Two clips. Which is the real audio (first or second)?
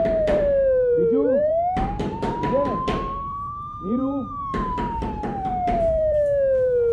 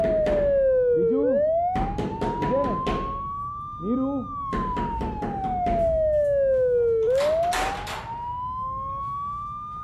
second